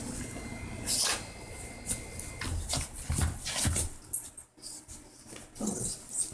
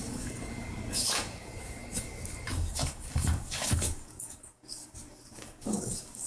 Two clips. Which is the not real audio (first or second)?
second